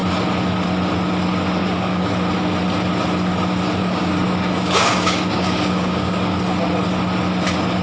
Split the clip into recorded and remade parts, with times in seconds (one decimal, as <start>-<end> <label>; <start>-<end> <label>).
0.0-1.6 recorded; 1.6-2.1 remade; 2.1-3.8 recorded; 3.8-6.4 remade; 6.4-7.8 recorded